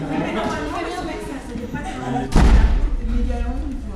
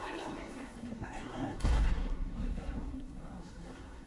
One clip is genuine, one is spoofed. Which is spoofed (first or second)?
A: second